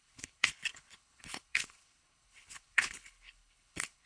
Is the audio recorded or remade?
remade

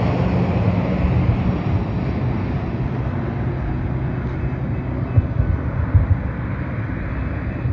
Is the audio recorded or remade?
recorded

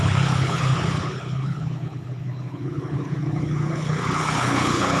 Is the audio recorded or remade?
remade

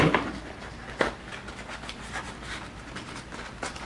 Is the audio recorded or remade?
recorded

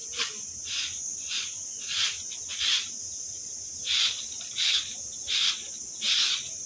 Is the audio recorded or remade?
recorded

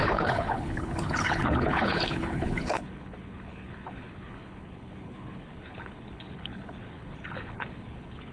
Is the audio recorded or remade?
remade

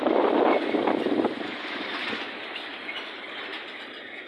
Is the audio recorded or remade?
recorded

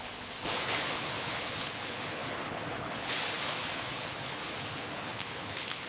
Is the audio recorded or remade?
remade